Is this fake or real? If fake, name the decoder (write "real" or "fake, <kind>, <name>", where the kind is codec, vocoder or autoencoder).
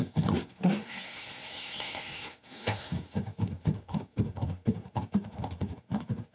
fake, codec, SNAC